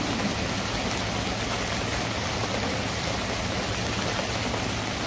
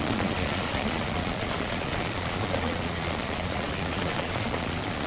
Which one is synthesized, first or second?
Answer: second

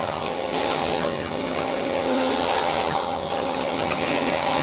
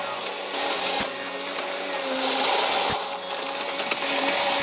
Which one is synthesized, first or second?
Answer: first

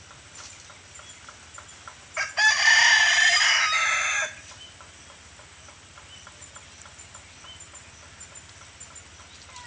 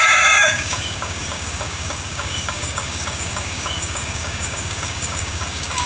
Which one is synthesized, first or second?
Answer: second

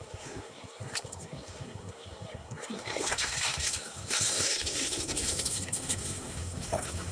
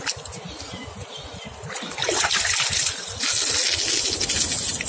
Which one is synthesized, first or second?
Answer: first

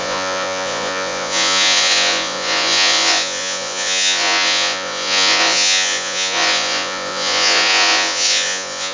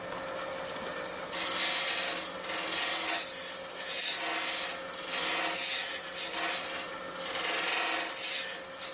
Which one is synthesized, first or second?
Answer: first